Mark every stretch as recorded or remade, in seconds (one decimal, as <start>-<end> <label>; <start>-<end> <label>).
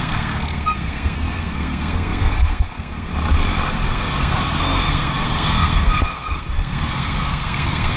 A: 0.0-3.1 remade; 3.1-3.7 recorded; 3.7-8.0 remade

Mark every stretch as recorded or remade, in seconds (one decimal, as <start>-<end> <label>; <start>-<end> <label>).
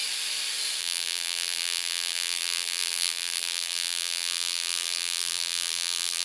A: 0.0-0.8 recorded; 0.8-6.2 remade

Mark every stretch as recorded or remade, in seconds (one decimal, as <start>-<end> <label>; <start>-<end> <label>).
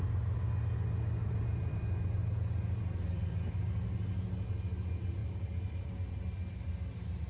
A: 0.0-1.2 recorded; 1.2-1.8 remade; 1.8-5.2 recorded; 5.2-5.9 remade; 5.9-7.3 recorded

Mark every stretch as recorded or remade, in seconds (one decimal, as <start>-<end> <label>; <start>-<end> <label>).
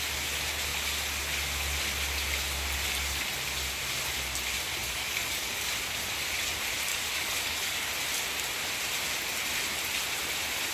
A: 0.0-4.8 recorded; 4.8-5.7 remade; 5.7-6.9 recorded; 6.9-7.9 remade; 7.9-10.7 recorded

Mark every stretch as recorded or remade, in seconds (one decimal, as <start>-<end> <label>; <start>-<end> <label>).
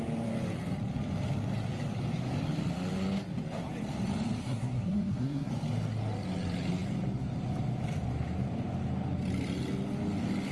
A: 0.0-4.4 recorded; 4.4-5.5 remade; 5.5-10.5 recorded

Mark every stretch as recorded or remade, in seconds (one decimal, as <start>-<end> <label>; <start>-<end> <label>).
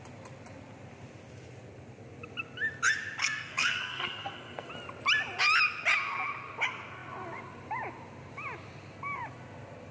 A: 0.0-3.2 recorded; 3.2-4.7 remade; 4.7-9.9 recorded